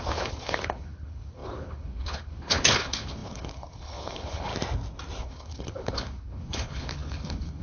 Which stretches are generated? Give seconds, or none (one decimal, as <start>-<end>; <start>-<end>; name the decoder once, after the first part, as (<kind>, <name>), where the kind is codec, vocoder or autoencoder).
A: 0.0-4.5 (codec, HILCodec); 5.2-7.6